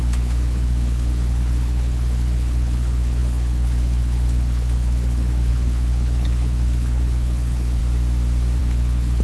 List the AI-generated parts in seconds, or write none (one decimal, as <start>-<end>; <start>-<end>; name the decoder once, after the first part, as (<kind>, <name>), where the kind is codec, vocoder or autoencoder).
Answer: 0.0-7.8 (codec, HILCodec); 8.6-9.2